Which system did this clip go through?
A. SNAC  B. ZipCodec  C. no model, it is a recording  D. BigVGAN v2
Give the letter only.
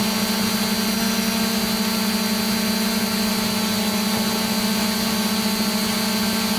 C